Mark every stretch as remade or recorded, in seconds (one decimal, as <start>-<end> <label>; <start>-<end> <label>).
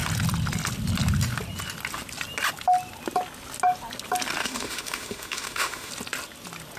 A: 0.0-4.4 recorded; 4.4-5.9 remade; 5.9-6.8 recorded